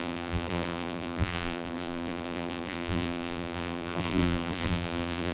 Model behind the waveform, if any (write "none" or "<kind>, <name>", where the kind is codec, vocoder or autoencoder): vocoder, BigVGAN v2